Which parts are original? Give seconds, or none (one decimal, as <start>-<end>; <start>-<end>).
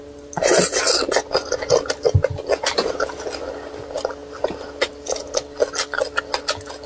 0.0-6.9